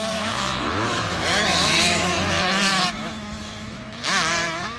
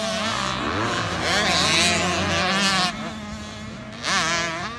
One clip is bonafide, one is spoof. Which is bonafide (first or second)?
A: second